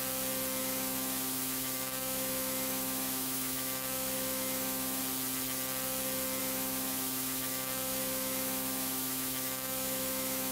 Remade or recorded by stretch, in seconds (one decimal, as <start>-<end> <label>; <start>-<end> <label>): 0.0-0.6 recorded; 0.6-5.0 remade; 5.0-6.4 recorded; 6.4-10.5 remade